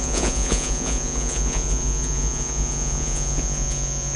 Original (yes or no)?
no